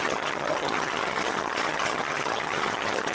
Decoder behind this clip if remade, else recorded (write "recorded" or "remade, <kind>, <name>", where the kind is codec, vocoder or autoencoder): remade, vocoder, HiFi-GAN